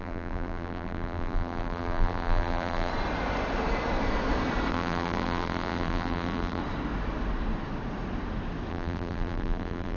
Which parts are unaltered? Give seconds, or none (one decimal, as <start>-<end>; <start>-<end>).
2.9-4.7; 6.6-8.7